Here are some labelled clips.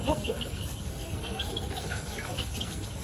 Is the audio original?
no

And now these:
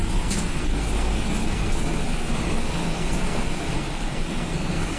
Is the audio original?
no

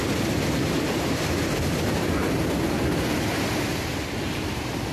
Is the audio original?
yes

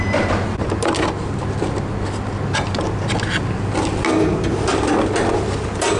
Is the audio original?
yes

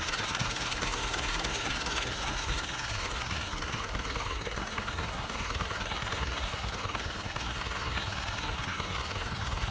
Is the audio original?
no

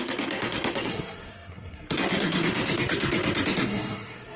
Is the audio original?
no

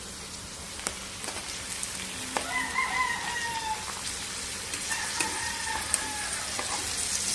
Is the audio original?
yes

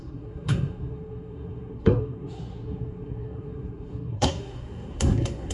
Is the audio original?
no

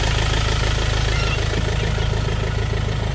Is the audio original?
yes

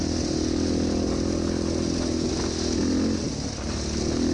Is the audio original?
yes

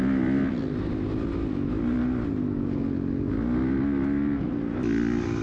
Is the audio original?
yes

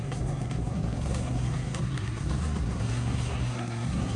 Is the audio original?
no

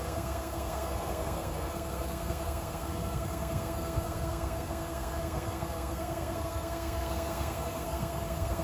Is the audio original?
no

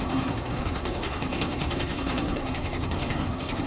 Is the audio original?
no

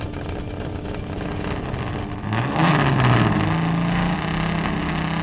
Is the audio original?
yes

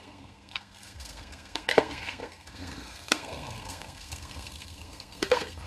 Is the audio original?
no